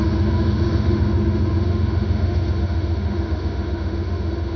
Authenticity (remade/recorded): remade